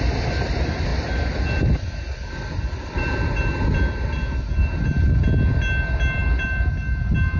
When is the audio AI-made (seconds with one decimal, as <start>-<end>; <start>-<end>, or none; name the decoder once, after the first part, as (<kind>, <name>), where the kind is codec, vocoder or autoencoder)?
none